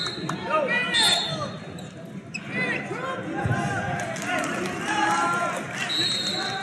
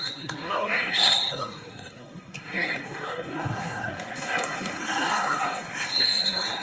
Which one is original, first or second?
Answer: first